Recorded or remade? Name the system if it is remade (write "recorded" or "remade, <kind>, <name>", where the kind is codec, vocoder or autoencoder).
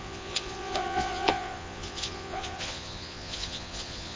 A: remade, vocoder, Vocos